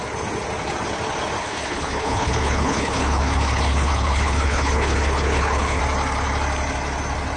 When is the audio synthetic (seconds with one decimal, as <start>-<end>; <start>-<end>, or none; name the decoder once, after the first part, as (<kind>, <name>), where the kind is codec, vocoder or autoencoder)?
1.4-5.8 (codec, HILCodec)